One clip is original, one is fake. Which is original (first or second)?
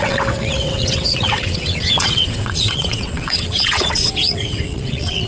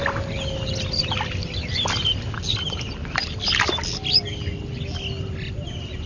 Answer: second